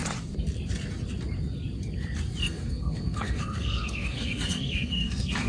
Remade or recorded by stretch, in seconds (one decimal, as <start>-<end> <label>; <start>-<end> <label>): 0.0-2.4 recorded; 2.4-5.5 remade